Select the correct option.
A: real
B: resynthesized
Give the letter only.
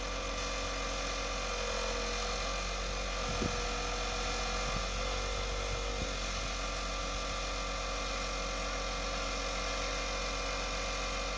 A